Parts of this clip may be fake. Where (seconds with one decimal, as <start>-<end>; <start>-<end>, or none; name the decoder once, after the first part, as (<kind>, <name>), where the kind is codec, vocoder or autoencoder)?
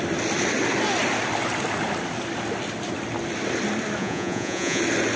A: 4.0-4.8 (vocoder, Vocos)